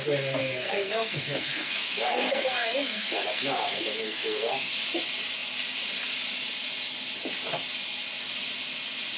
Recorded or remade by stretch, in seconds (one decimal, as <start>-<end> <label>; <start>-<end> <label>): 0.0-0.4 recorded; 0.4-4.7 remade; 4.7-9.2 recorded